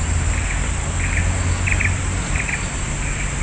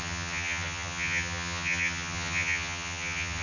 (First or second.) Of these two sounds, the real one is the first